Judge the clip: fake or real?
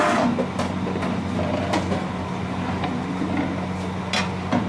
real